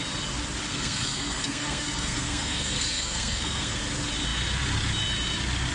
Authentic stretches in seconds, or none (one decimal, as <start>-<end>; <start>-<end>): 0.0-0.7; 3.8-5.7